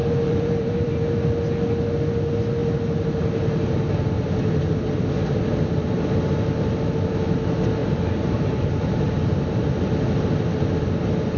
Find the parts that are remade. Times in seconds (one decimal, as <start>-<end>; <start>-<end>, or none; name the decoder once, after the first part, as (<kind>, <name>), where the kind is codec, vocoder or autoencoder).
0.0-1.0 (vocoder, BigVGAN v2); 7.8-9.7